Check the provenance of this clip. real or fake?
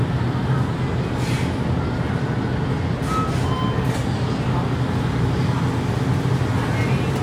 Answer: real